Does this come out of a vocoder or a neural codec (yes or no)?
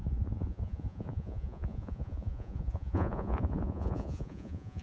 yes